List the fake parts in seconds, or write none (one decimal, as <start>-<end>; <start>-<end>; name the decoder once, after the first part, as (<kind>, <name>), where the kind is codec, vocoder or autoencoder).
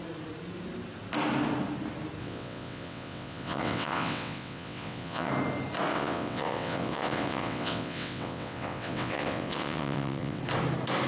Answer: 2.2-5.3 (vocoder, WaveNeXt); 5.9-10.4